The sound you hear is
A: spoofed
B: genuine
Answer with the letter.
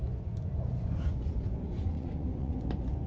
A